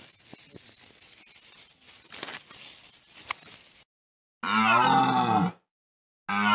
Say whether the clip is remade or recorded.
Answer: recorded